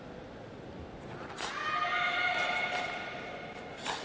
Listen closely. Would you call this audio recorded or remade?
recorded